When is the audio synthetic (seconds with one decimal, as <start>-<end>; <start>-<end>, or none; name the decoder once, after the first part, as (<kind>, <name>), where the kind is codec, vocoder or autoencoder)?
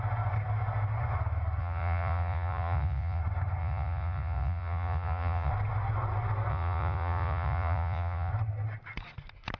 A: 1.6-3.2 (vocoder, Vocos); 3.6-5.5; 6.5-8.3